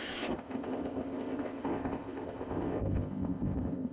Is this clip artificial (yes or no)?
yes